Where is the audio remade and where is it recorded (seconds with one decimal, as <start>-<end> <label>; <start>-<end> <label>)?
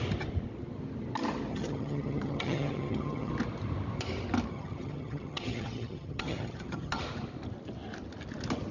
0.0-1.5 recorded; 1.5-3.3 remade; 3.3-4.5 recorded; 4.5-7.0 remade; 7.0-8.7 recorded